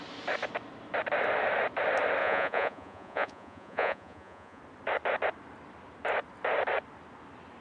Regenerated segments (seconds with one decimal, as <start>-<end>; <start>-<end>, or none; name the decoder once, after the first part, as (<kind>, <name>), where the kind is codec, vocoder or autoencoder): 2.2-4.6 (vocoder, Vocos)